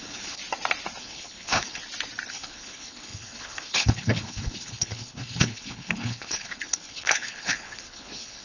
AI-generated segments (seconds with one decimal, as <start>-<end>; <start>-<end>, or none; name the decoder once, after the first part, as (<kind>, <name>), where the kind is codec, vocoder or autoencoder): 0.0-0.4 (codec, HILCodec); 1.0-1.8; 2.3-8.4

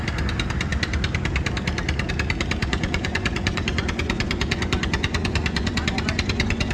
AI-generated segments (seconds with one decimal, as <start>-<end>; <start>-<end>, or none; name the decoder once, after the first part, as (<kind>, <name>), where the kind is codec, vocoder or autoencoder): 2.6-6.7 (vocoder, Vocos)

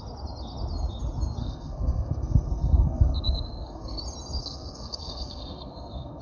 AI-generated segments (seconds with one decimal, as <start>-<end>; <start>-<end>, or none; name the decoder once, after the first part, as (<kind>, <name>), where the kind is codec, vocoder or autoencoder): 1.4-4.0 (codec, SNAC); 4.4-6.2

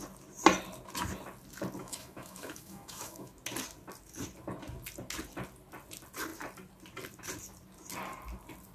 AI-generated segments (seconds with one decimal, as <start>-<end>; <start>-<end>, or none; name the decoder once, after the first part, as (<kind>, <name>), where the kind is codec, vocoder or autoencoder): 1.8-3.3 (autoencoder, DAC-VAE)

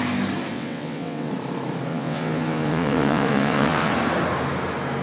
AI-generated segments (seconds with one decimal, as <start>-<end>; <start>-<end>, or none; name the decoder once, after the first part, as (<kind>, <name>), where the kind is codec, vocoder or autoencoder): 0.5-1.3 (vocoder, WaveNeXt); 1.9-3.9

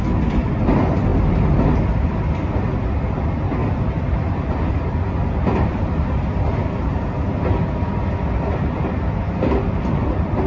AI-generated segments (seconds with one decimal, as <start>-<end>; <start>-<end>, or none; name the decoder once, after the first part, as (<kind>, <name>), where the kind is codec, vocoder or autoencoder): 1.1-2.4 (vocoder, BigVGAN v2)